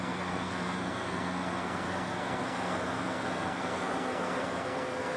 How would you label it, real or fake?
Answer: fake